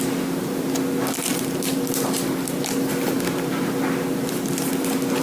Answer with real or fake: real